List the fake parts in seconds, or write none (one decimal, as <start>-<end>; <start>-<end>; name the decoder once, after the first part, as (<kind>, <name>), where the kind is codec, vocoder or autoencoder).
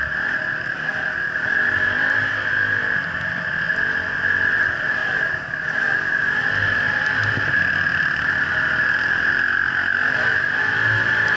5.0-6.4 (vocoder, BigVGAN v2)